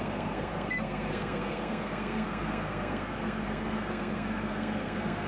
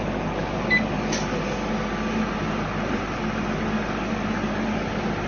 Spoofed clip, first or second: first